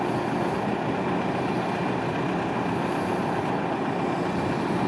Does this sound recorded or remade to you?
recorded